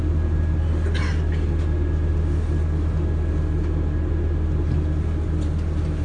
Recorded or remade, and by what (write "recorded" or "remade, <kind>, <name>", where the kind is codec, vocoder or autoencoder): recorded